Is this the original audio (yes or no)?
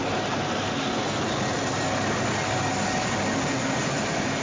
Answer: yes